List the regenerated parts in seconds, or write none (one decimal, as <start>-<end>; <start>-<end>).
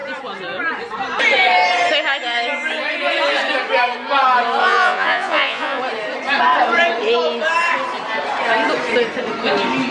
4.6-5.8